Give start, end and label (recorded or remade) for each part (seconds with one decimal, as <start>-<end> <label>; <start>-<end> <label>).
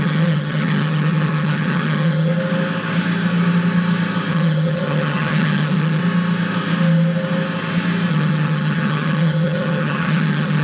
0.0-2.3 remade; 2.3-4.3 recorded; 4.3-6.0 remade; 6.0-8.1 recorded; 8.1-10.6 remade